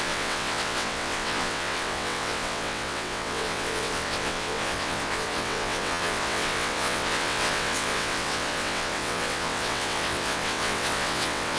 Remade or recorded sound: remade